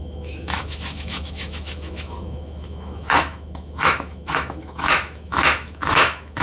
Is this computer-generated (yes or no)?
yes